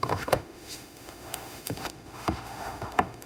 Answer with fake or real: fake